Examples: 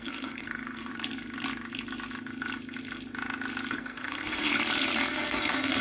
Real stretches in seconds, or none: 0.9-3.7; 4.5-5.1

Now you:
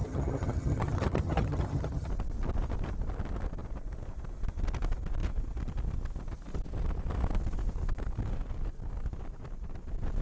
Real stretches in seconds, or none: 2.1-10.2

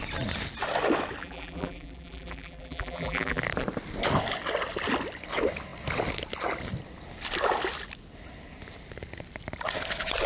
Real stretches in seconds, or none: 0.0-1.2; 3.4-10.3

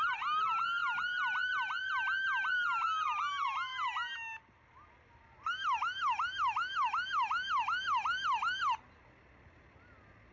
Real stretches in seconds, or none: 0.0-10.3

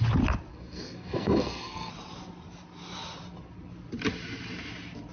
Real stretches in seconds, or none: 0.0-0.5; 1.9-5.1

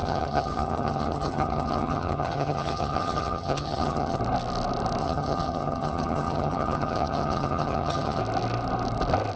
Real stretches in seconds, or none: 4.2-5.0; 8.2-9.4

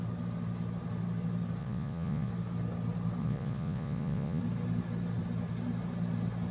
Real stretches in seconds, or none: 0.0-1.6; 2.3-3.2; 4.4-6.5